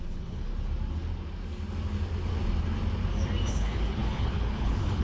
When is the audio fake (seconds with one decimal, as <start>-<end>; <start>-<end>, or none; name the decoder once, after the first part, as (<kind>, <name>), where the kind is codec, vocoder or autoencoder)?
0.0-0.5 (codec, HILCodec); 3.5-5.0